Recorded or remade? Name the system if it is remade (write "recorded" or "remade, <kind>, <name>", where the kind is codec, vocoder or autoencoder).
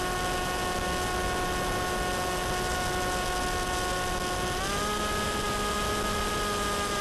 recorded